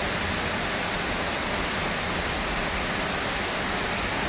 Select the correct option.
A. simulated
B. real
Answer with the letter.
B